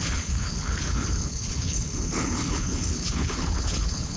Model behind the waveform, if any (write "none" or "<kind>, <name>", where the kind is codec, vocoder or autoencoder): codec, HILCodec